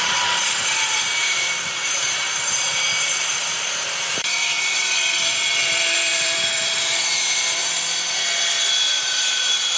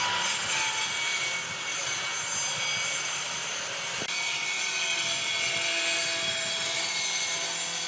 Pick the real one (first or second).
second